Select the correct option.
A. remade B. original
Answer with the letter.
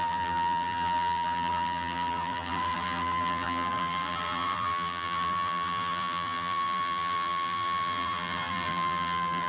A